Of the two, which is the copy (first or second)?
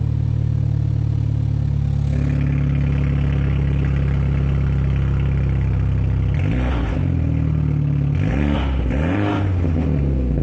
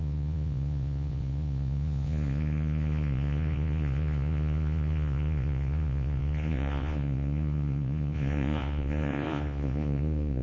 second